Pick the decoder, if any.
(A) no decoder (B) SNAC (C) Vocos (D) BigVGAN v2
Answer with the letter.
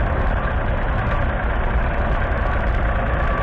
A